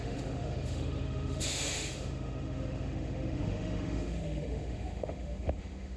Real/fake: fake